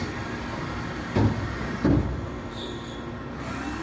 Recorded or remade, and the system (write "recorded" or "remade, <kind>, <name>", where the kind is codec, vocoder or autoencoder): recorded